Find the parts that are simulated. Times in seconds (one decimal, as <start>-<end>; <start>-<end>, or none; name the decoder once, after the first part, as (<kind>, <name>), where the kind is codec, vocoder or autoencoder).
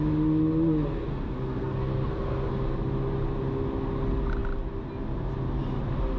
1.1-2.5 (codec, SNAC)